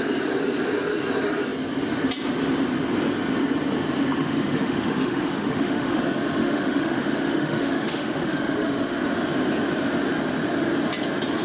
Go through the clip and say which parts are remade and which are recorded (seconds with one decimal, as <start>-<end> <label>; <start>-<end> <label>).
0.0-4.2 recorded; 4.2-6.0 remade; 6.0-6.4 recorded; 6.4-9.0 remade; 9.0-11.4 recorded